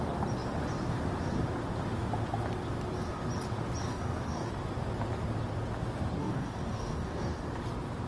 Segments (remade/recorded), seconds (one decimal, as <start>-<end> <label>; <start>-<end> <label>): 0.0-3.8 recorded; 3.8-4.5 remade; 4.5-6.2 recorded; 6.2-7.4 remade; 7.4-8.1 recorded